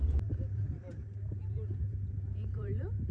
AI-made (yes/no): yes